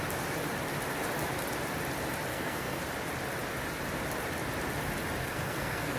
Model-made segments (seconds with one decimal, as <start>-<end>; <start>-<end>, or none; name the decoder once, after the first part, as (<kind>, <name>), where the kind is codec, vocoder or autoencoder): 2.3-2.8 (codec, SNAC); 5.2-6.0